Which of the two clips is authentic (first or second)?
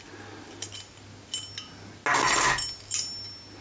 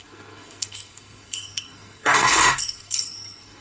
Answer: first